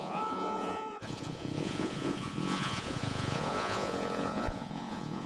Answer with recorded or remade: remade